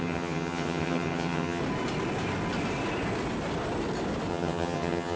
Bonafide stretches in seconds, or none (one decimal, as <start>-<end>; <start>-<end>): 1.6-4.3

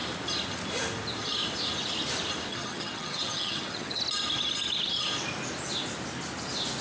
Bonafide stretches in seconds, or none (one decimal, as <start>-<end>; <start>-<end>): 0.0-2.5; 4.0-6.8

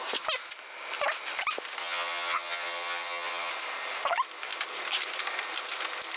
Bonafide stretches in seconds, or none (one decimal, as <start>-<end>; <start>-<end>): 0.0-1.8; 3.5-6.2